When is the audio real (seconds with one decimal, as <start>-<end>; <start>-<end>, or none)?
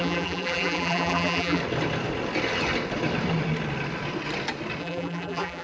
1.6-4.8